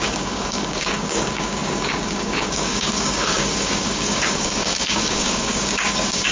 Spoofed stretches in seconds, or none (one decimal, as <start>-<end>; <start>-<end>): 0.0-6.3